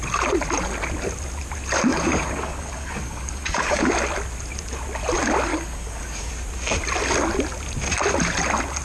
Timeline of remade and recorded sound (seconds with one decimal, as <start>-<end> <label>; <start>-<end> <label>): 0.0-1.9 recorded; 1.9-3.9 remade; 3.9-5.5 recorded; 5.5-6.3 remade; 6.3-8.8 recorded